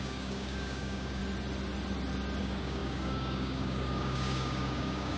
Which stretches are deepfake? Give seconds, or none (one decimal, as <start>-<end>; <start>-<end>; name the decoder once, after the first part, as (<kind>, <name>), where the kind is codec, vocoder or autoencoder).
0.0-1.2 (codec, DAC); 2.4-5.2